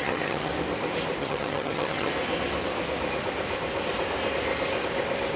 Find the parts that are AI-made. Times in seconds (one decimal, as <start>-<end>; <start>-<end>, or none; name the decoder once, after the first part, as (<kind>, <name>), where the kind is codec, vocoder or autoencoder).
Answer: 0.0-0.5 (vocoder, HiFi-GAN); 1.2-2.1